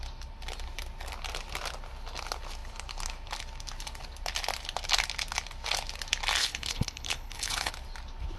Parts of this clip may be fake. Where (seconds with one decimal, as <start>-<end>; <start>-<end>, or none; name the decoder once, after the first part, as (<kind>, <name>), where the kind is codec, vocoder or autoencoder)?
6.4-7.7 (codec, HILCodec)